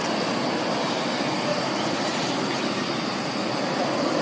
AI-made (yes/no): no